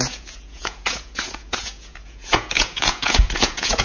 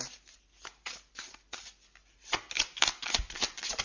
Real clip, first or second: second